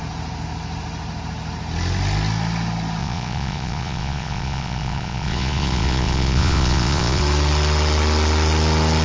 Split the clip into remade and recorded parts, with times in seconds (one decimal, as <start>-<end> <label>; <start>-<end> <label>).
0.0-3.0 recorded; 3.0-7.2 remade; 7.2-9.0 recorded